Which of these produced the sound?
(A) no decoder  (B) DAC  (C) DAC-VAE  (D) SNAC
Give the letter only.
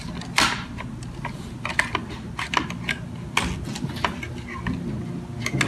A